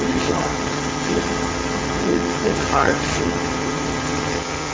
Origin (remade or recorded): remade